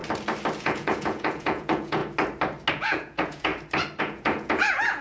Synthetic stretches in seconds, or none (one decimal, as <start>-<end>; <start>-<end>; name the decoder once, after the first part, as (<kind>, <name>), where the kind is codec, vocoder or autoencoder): 0.6-2.0 (vocoder, Vocos); 2.7-3.5; 4.0-5.0